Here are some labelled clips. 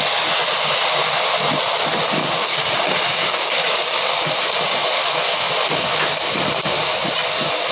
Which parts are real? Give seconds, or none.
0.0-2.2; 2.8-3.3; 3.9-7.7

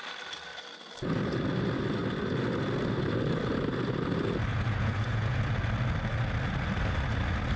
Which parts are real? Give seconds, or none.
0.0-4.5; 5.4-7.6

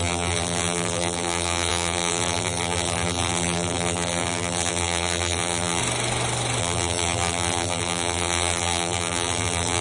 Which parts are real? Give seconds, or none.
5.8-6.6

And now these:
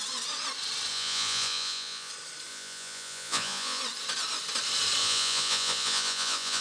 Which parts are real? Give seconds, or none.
0.0-0.9; 2.1-2.5; 3.8-5.0